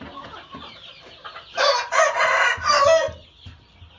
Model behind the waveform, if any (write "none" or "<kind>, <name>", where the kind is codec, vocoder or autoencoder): none